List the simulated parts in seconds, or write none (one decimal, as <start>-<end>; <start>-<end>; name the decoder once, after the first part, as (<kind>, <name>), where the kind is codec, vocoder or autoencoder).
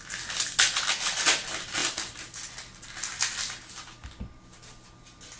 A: none